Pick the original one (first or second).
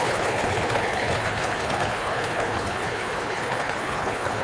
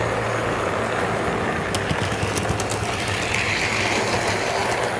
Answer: second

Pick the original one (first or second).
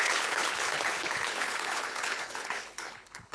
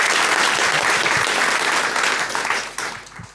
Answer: second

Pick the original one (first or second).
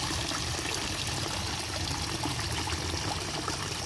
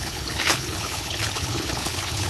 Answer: first